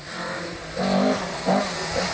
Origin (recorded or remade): recorded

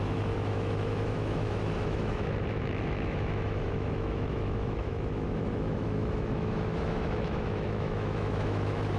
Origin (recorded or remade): remade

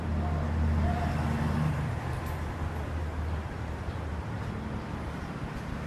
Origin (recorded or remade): recorded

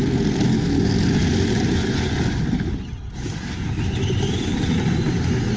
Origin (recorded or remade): recorded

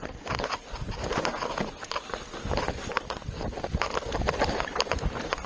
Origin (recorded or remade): recorded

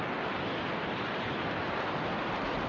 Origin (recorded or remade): recorded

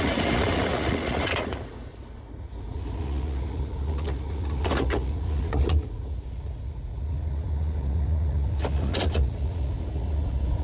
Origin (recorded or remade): remade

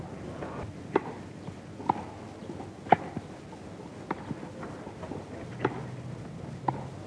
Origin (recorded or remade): recorded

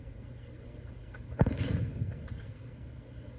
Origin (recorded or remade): remade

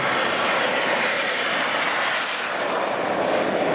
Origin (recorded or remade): recorded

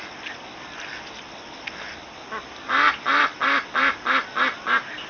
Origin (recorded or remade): recorded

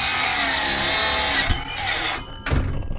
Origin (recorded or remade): recorded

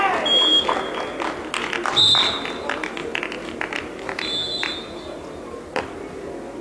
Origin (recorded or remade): recorded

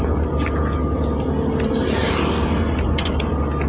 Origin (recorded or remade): recorded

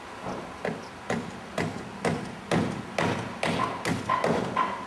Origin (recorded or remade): recorded